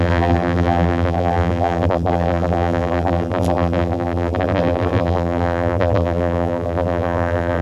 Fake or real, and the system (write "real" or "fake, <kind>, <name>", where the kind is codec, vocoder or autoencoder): fake, vocoder, BigVGAN v2